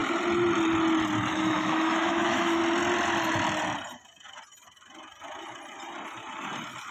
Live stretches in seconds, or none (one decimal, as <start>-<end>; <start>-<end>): 0.0-1.3; 2.6-6.9